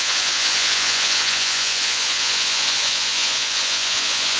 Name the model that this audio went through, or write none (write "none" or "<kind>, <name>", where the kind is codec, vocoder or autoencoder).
vocoder, Vocos